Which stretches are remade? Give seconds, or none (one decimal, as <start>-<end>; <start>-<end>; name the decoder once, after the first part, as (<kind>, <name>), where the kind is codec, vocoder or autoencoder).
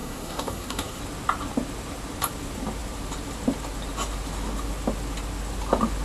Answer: 0.0-1.0 (codec, SNAC)